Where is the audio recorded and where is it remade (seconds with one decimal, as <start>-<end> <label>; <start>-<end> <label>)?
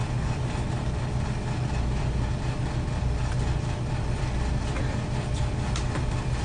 0.0-6.4 recorded